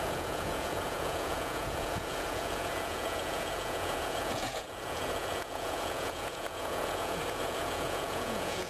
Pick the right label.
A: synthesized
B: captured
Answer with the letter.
A